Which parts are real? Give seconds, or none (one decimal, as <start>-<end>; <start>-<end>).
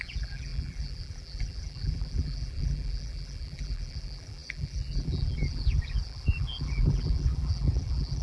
none